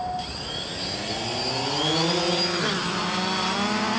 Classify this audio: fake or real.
real